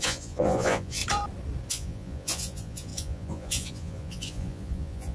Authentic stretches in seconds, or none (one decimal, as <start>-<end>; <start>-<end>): 1.0-1.7